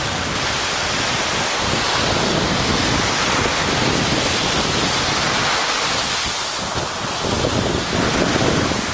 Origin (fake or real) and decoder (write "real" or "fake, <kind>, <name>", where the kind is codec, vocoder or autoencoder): real